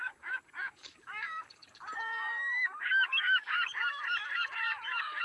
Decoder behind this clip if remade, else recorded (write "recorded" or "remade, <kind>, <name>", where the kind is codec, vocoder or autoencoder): remade, codec, DAC